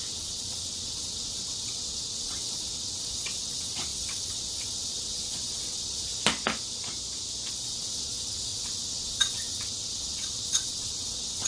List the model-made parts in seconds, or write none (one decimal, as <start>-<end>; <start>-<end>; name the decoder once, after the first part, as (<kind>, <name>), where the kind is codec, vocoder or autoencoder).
0.0-6.1 (vocoder, WaveNeXt); 7.5-11.5